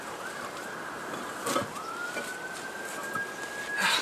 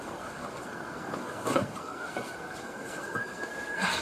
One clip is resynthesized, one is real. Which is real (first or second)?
first